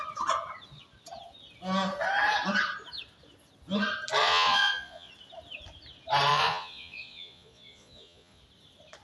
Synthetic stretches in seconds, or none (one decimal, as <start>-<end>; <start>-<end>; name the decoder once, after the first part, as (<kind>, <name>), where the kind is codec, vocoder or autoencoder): 4.2-5.1 (vocoder, Vocos); 6.3-8.4